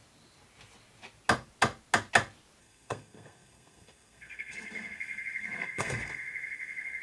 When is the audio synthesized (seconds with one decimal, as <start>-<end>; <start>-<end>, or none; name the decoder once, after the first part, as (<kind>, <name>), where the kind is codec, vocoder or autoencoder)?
2.6-7.0 (codec, SNAC)